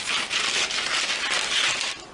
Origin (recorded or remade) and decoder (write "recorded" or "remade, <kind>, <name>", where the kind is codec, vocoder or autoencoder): remade, vocoder, BigVGAN v2